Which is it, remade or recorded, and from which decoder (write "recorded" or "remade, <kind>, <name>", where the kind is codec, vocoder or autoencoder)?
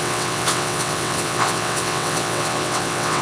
remade, vocoder, WaveNeXt